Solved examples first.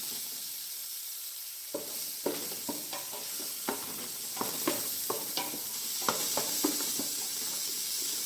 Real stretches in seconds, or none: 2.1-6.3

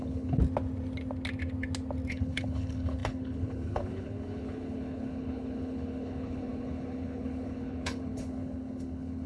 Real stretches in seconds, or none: 0.4-2.1